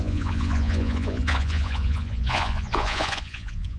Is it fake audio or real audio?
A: fake